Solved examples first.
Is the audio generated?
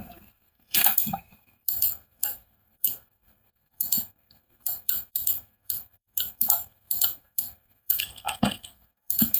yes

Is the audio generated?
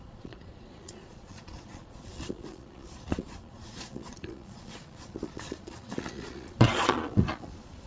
yes